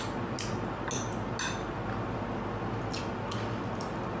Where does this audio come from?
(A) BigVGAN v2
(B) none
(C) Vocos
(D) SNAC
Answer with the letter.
B